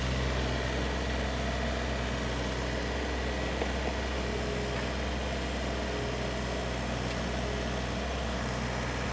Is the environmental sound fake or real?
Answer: real